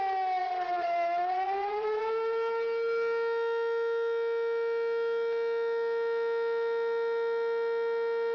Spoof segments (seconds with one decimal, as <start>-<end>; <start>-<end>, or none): 0.4-2.0